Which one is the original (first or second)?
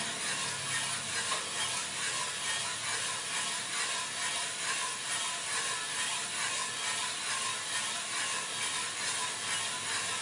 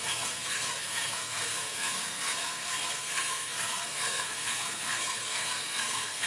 first